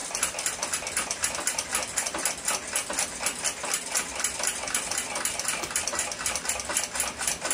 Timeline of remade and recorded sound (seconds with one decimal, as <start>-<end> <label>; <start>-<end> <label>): 0.0-7.5 recorded